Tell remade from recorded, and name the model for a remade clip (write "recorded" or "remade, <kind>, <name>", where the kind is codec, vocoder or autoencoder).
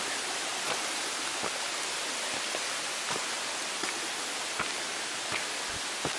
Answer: recorded